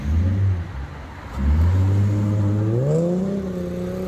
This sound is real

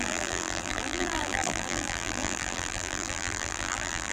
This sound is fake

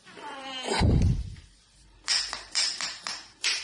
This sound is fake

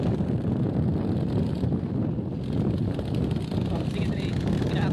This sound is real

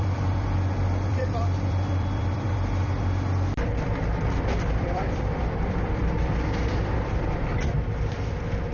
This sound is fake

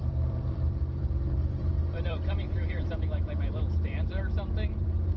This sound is fake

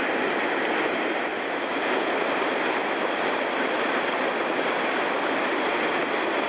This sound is real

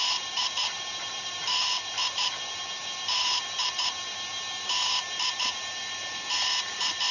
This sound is fake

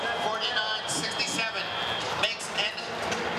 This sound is real